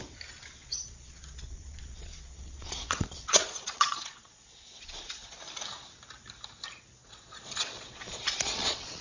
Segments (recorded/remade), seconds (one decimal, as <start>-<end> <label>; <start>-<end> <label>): 0.0-0.6 recorded; 0.6-5.4 remade; 5.4-7.0 recorded; 7.0-9.0 remade